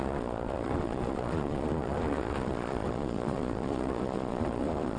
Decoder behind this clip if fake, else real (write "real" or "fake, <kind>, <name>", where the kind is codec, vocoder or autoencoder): fake, vocoder, Vocos